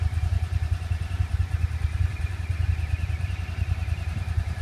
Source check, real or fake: fake